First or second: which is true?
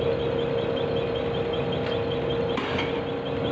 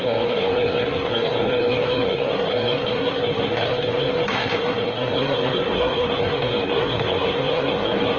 first